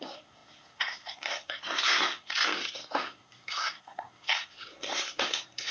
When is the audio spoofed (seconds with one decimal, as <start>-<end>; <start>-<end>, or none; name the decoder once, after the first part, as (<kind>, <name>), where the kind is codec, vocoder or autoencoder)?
0.0-5.7 (codec, SNAC)